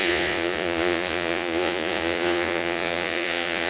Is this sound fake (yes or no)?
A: yes